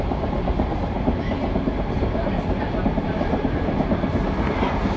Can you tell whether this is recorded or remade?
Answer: recorded